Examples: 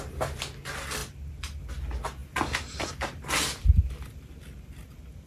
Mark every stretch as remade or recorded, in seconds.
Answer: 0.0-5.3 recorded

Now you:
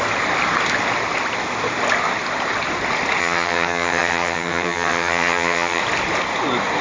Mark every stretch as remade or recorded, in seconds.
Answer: 0.0-3.2 recorded; 3.2-5.8 remade; 5.8-6.8 recorded

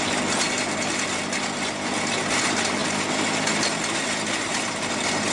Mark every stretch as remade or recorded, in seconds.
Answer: 0.0-5.3 recorded

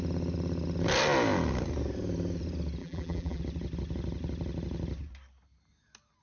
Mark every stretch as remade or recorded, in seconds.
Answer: 0.0-2.8 recorded; 2.8-3.4 remade; 3.4-6.2 recorded

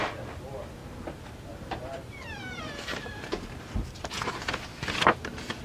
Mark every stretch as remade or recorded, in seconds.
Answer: 0.0-0.8 recorded; 0.8-4.2 remade; 4.2-5.6 recorded

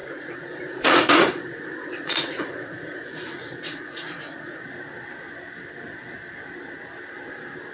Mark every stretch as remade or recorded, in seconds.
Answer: 0.0-4.6 remade; 4.6-7.7 recorded

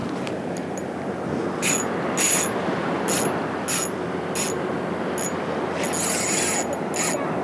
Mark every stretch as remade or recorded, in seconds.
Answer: 0.0-7.4 recorded